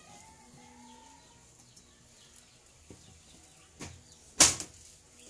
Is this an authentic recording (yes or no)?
yes